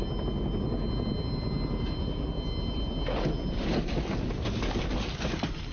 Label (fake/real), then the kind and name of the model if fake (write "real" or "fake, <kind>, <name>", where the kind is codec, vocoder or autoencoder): real